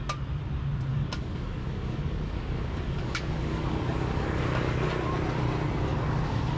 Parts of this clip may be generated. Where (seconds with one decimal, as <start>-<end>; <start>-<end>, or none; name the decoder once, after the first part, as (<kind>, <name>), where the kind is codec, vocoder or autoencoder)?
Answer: 0.9-4.9 (codec, DAC); 5.9-6.6